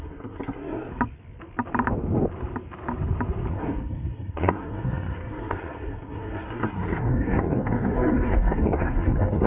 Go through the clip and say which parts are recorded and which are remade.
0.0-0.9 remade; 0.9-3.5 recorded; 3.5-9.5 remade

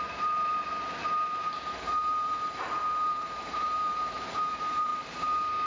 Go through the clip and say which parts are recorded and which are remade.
0.0-4.9 remade; 4.9-5.7 recorded

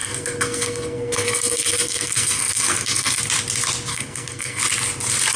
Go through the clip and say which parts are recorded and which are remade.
0.0-3.2 remade; 3.2-3.9 recorded; 3.9-4.6 remade; 4.6-5.4 recorded

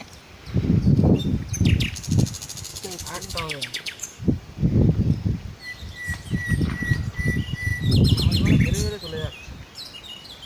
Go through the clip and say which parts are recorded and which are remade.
0.0-2.7 recorded; 2.7-4.2 remade; 4.2-10.5 recorded

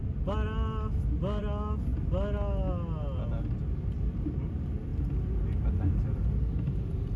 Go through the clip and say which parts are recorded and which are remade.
0.0-7.2 recorded